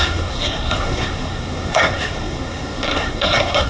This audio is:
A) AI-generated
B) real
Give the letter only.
A